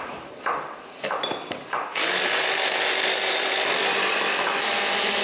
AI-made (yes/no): no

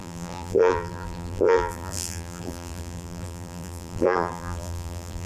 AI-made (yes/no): yes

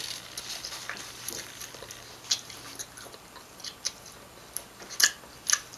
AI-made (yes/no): no